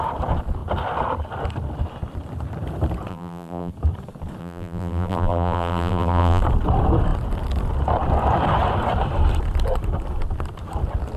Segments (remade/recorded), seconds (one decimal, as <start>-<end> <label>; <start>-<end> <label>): 0.0-3.1 recorded; 3.1-3.7 remade; 3.7-4.4 recorded; 4.4-6.4 remade; 6.4-11.2 recorded